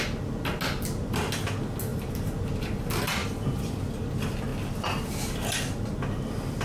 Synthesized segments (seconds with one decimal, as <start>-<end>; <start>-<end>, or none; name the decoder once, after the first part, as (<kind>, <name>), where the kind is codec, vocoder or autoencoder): none